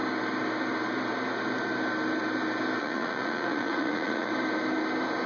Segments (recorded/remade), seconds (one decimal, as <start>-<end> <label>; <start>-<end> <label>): 0.0-2.8 recorded; 2.8-4.3 remade; 4.3-5.3 recorded